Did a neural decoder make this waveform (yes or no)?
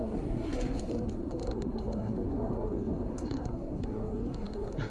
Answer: yes